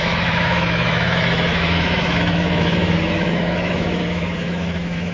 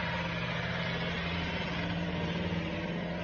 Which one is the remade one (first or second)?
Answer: first